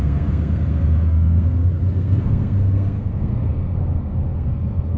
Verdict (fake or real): fake